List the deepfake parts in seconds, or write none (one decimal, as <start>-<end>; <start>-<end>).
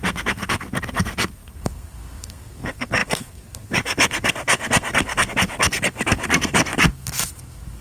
0.0-7.8